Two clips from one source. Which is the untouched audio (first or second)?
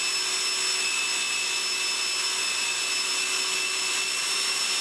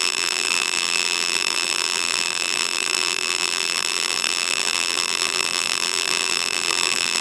first